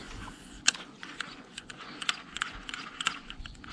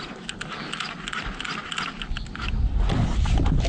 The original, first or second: second